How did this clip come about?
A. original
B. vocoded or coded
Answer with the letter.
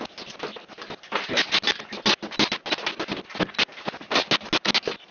A